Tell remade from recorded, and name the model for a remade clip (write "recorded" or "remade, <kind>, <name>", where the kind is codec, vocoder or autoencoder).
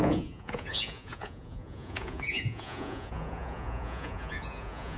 remade, vocoder, Vocos